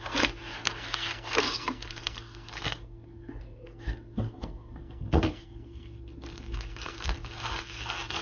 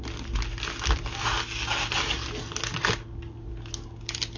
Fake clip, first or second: first